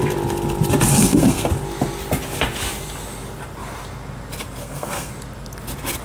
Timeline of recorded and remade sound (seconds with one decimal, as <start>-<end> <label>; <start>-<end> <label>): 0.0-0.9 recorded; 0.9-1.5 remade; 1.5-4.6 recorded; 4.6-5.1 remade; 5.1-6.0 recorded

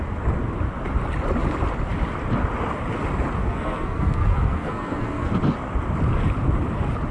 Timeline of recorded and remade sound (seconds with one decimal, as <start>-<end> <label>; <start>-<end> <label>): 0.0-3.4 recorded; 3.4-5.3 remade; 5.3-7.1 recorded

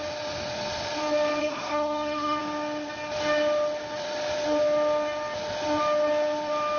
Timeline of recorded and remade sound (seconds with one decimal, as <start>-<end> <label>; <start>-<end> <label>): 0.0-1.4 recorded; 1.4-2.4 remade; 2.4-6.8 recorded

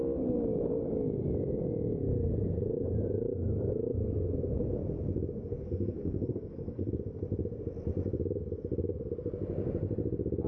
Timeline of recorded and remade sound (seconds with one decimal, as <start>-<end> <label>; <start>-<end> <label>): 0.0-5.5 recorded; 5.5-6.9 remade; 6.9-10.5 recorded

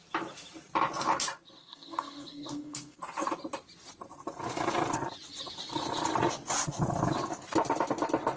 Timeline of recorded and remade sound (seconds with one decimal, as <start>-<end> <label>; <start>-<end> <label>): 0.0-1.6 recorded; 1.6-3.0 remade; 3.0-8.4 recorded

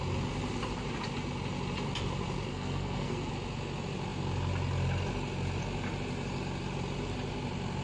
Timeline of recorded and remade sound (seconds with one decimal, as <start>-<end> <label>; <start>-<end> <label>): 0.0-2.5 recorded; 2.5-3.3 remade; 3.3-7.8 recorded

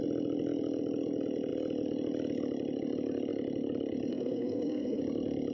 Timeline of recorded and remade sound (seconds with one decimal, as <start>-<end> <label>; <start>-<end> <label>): 0.0-4.1 recorded; 4.1-5.0 remade; 5.0-5.5 recorded